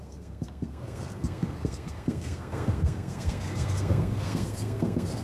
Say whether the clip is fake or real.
fake